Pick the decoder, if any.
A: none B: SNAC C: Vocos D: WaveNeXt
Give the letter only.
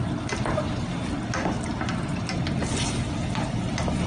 A